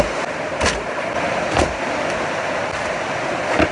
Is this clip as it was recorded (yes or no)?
yes